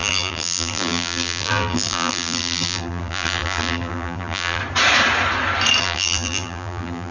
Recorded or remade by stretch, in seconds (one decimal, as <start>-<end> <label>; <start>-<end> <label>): 0.0-4.6 remade; 4.6-5.8 recorded; 5.8-7.1 remade